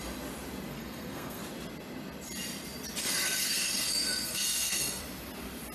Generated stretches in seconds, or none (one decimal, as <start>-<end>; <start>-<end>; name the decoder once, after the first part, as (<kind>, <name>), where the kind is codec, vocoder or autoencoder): 0.7-1.4 (codec, SNAC); 3.0-5.0